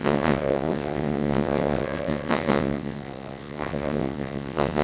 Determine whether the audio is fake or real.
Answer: fake